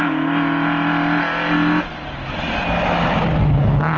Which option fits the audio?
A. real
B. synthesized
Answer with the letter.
A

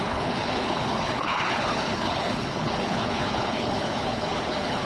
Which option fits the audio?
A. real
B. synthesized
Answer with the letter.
B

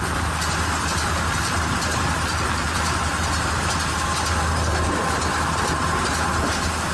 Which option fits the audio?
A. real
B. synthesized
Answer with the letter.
A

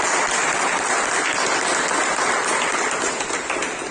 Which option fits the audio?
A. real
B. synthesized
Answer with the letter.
A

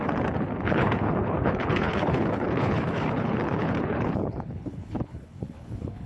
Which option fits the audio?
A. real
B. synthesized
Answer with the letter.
B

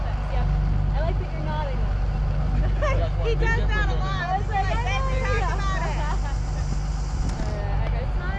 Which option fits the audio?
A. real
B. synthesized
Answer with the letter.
A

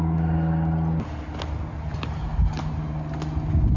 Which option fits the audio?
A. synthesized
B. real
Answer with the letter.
B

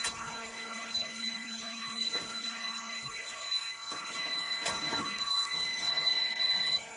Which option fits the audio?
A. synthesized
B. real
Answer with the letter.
A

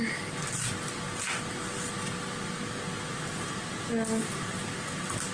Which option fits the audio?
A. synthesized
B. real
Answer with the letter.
B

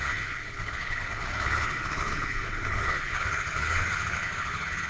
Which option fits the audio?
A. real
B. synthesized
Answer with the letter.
B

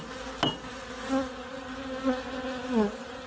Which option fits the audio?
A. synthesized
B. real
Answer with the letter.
B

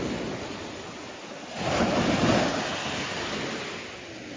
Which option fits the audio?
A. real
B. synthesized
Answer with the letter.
A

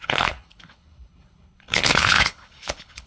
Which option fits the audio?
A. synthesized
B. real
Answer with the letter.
A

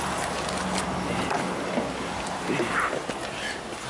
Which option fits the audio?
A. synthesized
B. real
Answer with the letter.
B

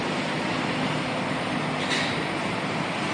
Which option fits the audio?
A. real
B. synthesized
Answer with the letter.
A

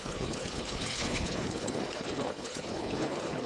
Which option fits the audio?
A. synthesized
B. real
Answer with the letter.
A